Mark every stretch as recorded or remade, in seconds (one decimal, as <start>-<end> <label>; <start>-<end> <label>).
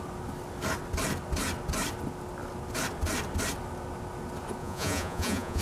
0.0-4.6 recorded; 4.6-5.6 remade